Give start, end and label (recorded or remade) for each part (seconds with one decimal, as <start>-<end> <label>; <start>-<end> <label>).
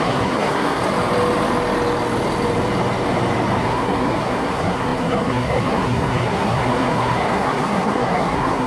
0.0-0.8 remade; 0.8-3.6 recorded; 3.6-8.7 remade